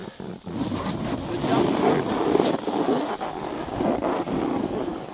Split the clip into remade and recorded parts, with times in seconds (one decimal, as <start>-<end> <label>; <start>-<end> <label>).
0.0-5.1 recorded